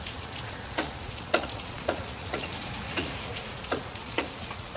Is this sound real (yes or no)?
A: no